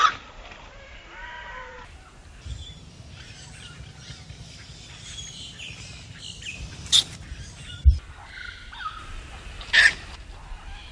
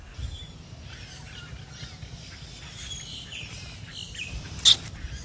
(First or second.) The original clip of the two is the second